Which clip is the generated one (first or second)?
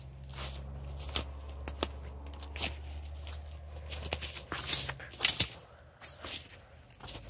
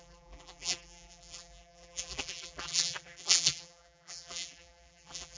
second